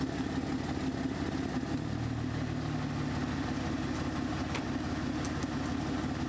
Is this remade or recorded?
recorded